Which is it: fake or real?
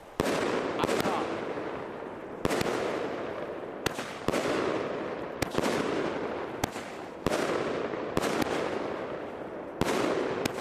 real